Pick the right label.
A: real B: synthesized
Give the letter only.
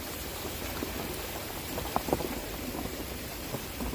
B